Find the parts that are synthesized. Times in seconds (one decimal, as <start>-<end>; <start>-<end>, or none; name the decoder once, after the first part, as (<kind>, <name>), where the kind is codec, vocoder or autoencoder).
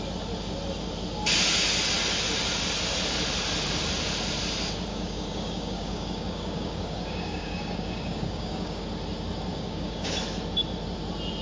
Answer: 4.9-8.8 (codec, DAC); 9.5-10.1